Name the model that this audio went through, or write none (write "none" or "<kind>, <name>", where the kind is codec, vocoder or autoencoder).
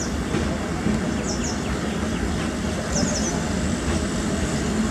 none